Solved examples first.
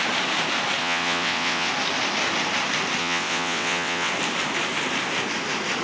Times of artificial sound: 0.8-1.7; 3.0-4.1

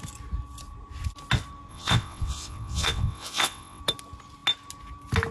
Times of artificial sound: 1.7-3.8

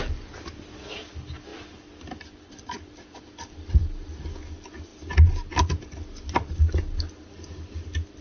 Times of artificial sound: none

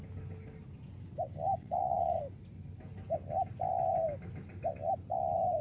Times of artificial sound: 1.5-2.2